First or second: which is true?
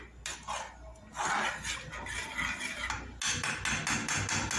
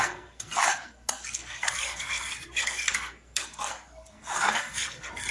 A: first